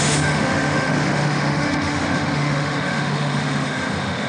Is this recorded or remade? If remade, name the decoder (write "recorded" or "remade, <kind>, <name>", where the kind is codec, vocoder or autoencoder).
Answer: remade, autoencoder, DAC-VAE